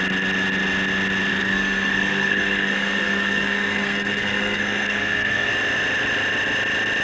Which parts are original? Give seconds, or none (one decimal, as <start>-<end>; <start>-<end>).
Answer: 0.0-1.3; 5.5-7.0